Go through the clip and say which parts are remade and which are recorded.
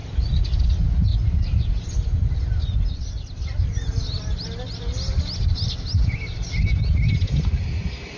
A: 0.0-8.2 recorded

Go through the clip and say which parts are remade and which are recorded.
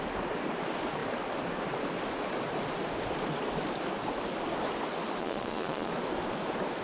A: 0.0-5.2 recorded; 5.2-5.9 remade; 5.9-6.8 recorded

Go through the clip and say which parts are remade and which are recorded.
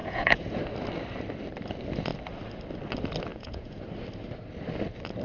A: 0.0-0.6 remade; 0.6-3.3 recorded; 3.3-3.8 remade; 3.8-5.2 recorded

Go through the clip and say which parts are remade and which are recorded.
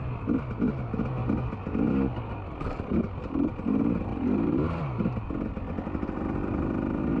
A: 0.0-7.2 recorded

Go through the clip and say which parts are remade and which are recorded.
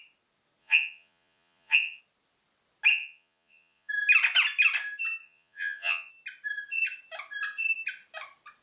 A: 0.0-0.6 recorded; 0.6-2.0 remade; 2.0-2.9 recorded; 2.9-3.9 remade; 3.9-5.2 recorded; 5.2-6.1 remade; 6.1-8.6 recorded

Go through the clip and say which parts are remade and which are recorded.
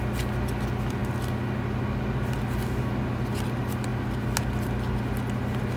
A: 0.0-5.8 recorded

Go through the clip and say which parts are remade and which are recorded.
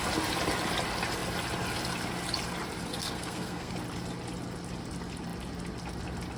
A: 0.0-2.9 recorded; 2.9-3.7 remade; 3.7-6.4 recorded